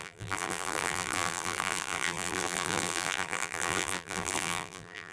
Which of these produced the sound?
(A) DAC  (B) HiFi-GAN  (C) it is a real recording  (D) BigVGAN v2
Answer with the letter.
D